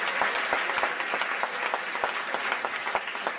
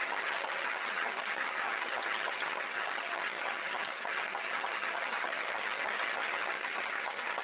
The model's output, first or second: second